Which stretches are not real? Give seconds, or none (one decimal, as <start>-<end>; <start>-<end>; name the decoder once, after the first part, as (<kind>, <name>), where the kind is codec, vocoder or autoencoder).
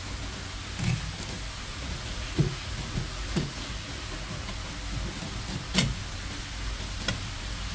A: 1.7-4.5 (vocoder, Vocos)